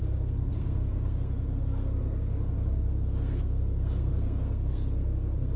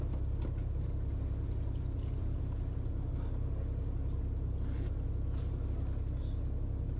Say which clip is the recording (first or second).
second